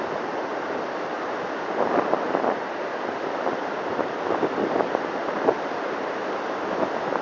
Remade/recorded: remade